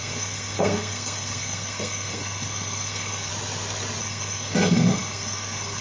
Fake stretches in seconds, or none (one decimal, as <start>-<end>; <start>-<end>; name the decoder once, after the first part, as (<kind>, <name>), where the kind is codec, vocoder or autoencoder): 0.0-3.3 (codec, SNAC); 4.0-5.8